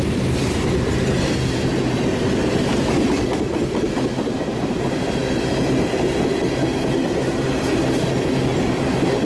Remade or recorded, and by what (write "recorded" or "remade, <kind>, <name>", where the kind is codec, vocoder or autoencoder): recorded